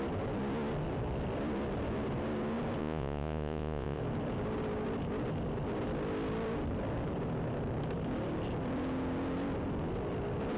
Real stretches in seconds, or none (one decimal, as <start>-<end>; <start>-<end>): 0.0-2.8; 4.0-10.6